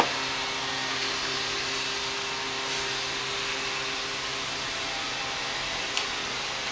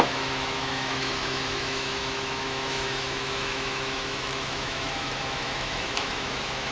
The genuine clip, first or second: first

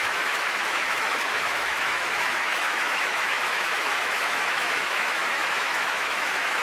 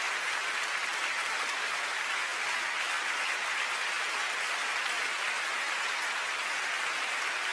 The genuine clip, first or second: second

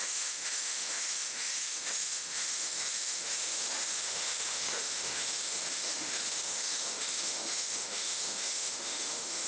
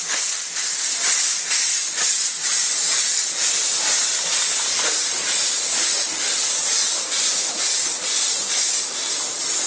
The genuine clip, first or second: second